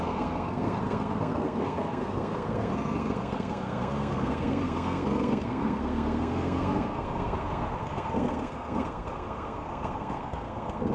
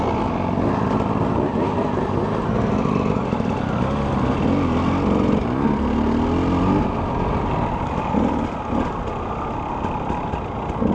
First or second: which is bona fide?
second